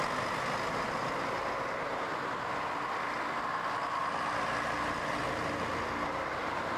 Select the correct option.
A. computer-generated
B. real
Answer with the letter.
B